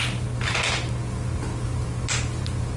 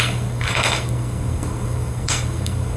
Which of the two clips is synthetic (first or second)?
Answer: second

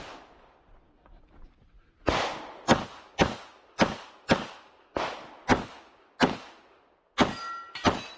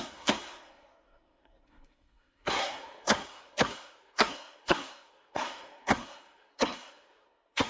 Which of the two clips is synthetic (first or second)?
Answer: second